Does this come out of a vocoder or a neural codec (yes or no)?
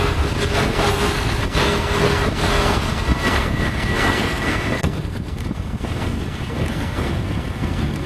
yes